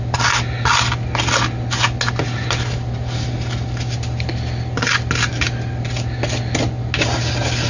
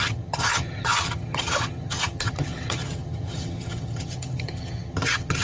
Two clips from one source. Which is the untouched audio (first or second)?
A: first